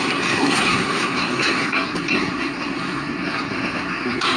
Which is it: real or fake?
fake